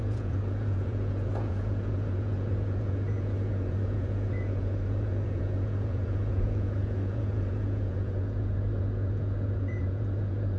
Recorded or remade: remade